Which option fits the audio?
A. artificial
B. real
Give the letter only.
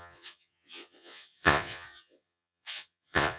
A